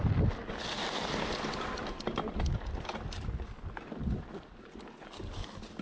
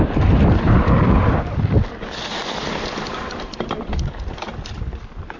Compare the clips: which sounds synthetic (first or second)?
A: second